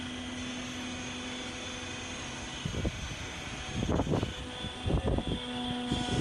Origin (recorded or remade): recorded